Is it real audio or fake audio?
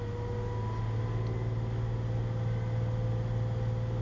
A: real